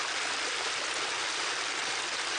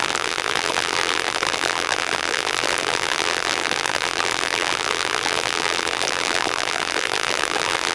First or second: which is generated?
second